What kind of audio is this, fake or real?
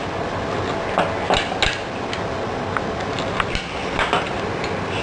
real